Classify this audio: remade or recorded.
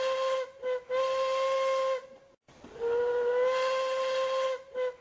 recorded